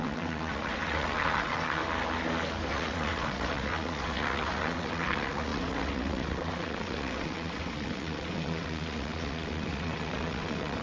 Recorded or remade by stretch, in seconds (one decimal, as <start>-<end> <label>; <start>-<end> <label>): 0.0-1.8 remade; 1.8-2.7 recorded; 2.7-10.8 remade